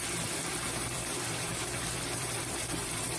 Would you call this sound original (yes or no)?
no